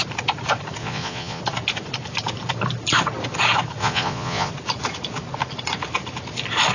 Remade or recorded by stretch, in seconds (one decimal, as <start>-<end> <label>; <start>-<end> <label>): 0.0-0.8 recorded; 0.8-1.4 remade; 1.4-3.8 recorded; 3.8-4.5 remade; 4.5-6.7 recorded